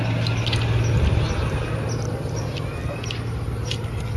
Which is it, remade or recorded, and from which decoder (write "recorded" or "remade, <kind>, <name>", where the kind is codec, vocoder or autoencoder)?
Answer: recorded